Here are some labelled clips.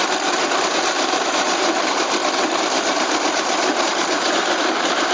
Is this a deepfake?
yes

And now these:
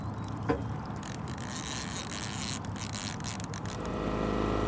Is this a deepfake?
no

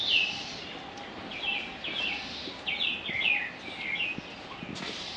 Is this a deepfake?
no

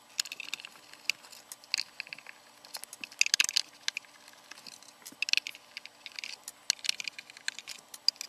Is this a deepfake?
no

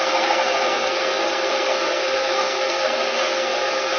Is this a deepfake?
yes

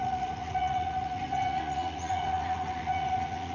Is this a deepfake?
yes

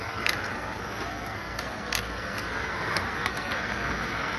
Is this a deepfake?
yes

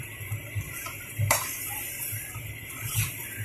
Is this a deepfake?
yes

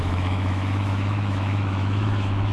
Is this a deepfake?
yes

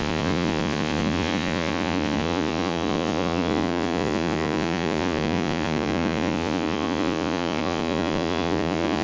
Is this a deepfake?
yes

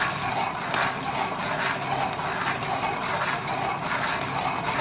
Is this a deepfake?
no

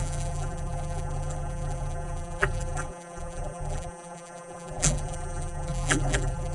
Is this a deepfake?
yes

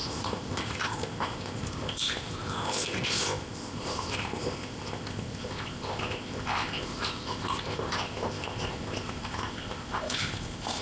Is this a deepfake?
yes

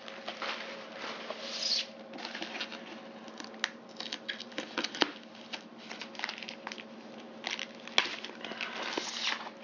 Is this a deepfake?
no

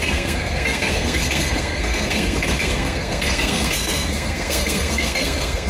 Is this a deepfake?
yes